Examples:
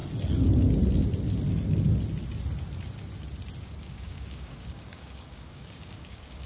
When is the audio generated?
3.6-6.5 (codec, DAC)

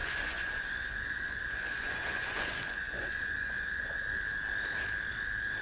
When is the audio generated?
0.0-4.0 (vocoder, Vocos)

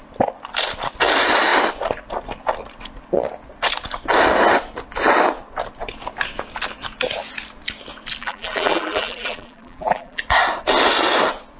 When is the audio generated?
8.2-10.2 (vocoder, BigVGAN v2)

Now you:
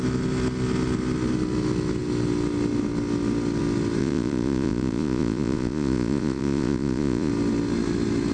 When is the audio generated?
4.0-7.3 (vocoder, Vocos)